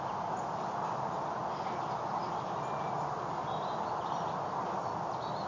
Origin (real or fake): real